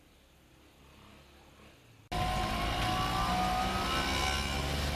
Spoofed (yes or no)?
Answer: no